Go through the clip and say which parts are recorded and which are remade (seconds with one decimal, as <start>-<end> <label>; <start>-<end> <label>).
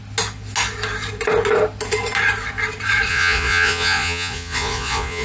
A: 0.0-3.1 recorded; 3.1-5.2 remade